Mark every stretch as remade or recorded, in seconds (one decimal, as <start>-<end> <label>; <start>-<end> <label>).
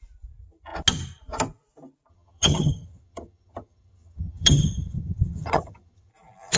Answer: 0.0-2.1 recorded; 2.1-6.1 remade; 6.1-6.6 recorded